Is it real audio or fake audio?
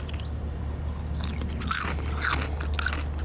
real